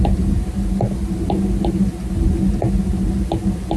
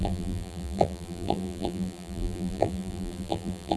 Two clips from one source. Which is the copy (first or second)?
second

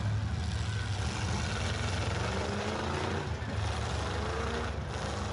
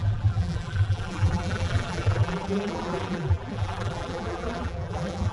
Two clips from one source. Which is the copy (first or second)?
second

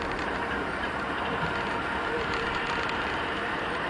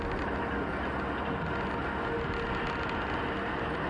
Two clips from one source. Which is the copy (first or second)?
first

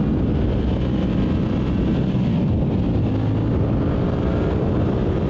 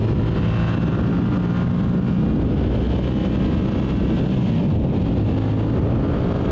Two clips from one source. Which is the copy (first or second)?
first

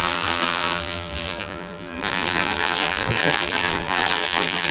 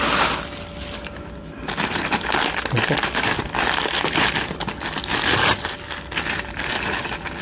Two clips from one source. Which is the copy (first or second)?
first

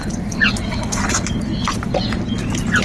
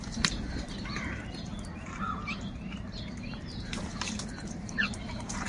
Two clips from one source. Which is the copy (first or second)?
second